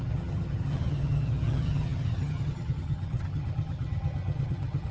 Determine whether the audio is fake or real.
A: fake